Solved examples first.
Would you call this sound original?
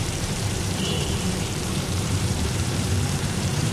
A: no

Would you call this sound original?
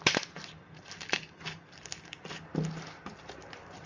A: yes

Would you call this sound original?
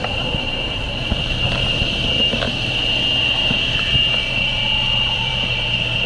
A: no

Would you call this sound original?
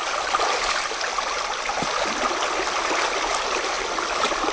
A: yes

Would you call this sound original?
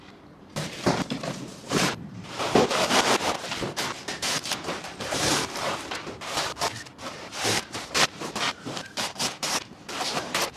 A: no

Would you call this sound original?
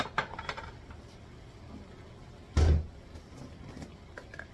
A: yes